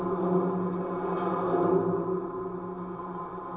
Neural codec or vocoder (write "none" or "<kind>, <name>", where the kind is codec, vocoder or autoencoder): none